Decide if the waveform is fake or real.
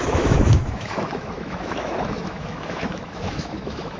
fake